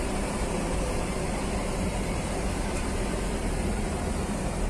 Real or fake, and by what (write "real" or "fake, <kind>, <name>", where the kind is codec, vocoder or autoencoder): fake, vocoder, BigVGAN v2